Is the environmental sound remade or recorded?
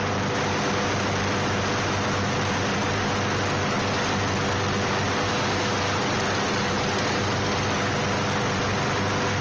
recorded